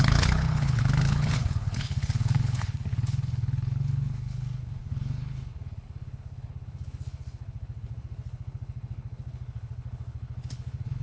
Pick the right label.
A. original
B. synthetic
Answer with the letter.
B